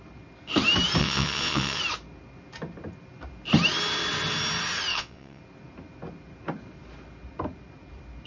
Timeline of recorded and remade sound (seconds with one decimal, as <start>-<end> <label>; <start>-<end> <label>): 0.0-1.0 recorded; 1.0-1.8 remade; 1.8-4.9 recorded; 4.9-5.4 remade; 5.4-8.3 recorded